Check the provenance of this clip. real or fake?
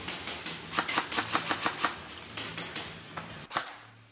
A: real